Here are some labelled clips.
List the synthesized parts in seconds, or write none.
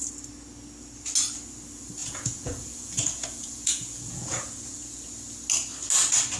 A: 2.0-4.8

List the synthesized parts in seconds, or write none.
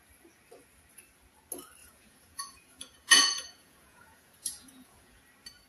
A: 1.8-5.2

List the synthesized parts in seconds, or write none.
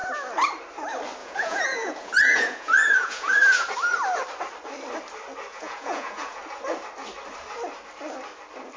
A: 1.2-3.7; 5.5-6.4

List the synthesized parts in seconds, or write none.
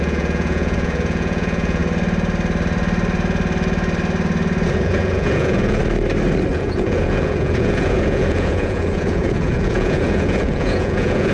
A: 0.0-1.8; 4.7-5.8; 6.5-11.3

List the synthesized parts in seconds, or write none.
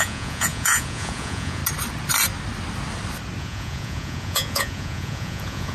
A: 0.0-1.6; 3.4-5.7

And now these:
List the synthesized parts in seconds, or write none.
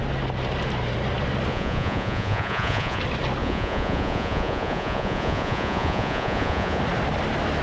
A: 1.5-3.0; 3.4-6.8